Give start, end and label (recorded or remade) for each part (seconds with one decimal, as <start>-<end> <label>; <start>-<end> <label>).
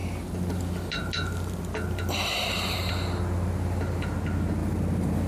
0.0-2.9 remade; 2.9-4.6 recorded; 4.6-5.3 remade